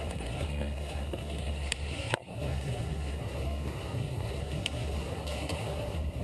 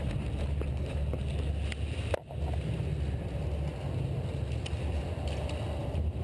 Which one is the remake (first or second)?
first